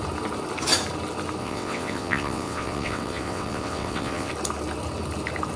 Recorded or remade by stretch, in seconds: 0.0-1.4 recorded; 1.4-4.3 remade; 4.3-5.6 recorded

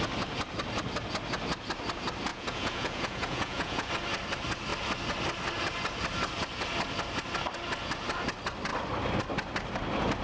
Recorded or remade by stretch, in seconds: 0.0-2.3 recorded; 2.3-3.9 remade; 3.9-10.2 recorded

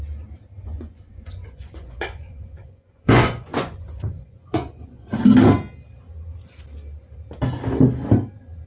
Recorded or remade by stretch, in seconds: 0.0-0.6 recorded; 0.6-5.2 remade; 5.2-8.7 recorded